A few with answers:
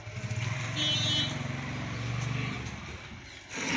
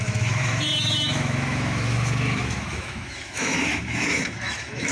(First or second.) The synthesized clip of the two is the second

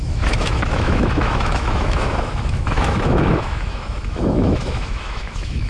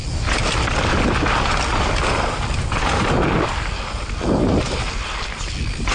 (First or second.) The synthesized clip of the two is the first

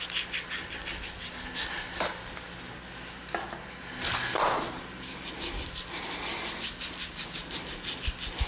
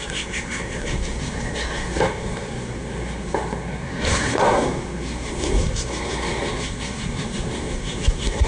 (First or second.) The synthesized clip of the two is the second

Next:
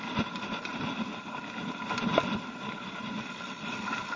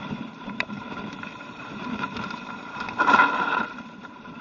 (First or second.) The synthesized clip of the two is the second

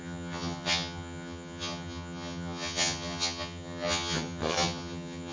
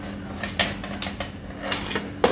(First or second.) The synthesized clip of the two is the first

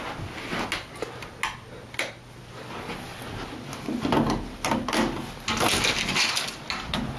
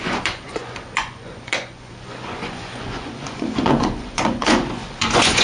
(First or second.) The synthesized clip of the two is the second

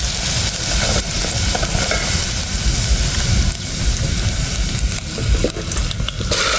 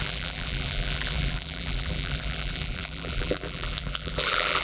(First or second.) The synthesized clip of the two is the second